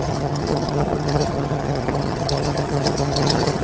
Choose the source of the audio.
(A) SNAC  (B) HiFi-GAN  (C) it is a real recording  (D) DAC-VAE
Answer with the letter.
B